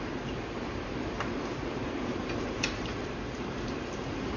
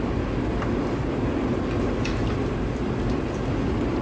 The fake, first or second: first